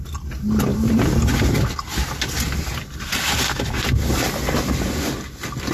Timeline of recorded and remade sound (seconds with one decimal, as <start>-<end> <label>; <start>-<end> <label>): 0.0-5.7 recorded